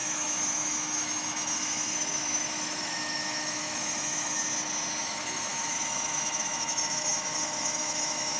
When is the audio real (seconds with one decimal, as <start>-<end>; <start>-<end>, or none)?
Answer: 4.4-5.0